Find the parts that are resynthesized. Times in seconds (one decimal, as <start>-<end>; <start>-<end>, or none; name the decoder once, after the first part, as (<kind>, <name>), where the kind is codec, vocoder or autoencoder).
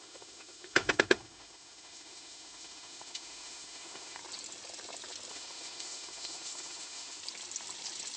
0.0-4.2 (autoencoder, DAC-VAE); 5.3-7.2